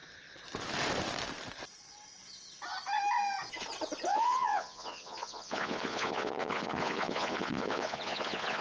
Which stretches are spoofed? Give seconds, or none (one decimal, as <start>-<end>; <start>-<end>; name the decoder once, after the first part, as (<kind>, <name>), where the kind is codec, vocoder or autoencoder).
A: 4.1-8.6 (vocoder, Vocos)